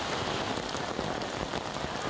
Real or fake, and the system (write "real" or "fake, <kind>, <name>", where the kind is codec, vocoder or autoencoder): real